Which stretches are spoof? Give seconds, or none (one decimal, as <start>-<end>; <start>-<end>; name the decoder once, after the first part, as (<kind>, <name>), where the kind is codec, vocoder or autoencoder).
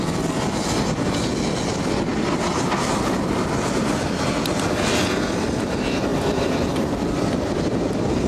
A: 2.1-2.9 (vocoder, BigVGAN v2); 6.1-8.3